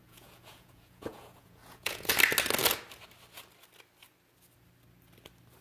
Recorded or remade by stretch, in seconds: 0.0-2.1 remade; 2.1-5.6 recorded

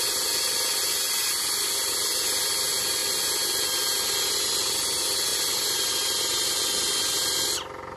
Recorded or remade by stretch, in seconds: 0.0-3.0 recorded; 3.0-3.7 remade; 3.7-5.3 recorded; 5.3-6.2 remade; 6.2-8.0 recorded

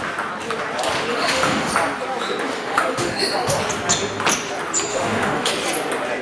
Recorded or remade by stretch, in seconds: 0.0-1.1 recorded; 1.1-1.7 remade; 1.7-2.5 recorded; 2.5-3.6 remade; 3.6-4.9 recorded; 4.9-5.5 remade; 5.5-6.2 recorded

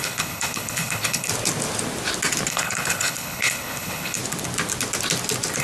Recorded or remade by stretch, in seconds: 0.0-1.3 remade; 1.3-2.5 recorded; 2.5-4.2 remade; 4.2-5.6 recorded

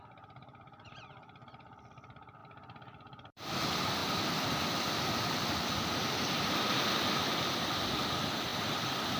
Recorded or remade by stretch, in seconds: 0.0-2.4 recorded; 2.4-3.6 remade; 3.6-9.2 recorded

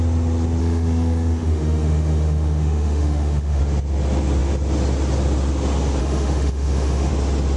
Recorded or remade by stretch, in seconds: 0.0-0.6 recorded; 0.6-3.6 remade; 3.6-6.0 recorded; 6.0-7.1 remade; 7.1-7.6 recorded